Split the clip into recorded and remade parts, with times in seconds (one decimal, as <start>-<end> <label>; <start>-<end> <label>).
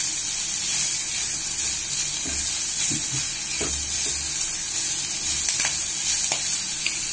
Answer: 0.0-7.1 recorded